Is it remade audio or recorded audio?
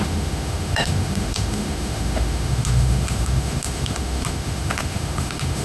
remade